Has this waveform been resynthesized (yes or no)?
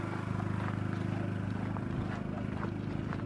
no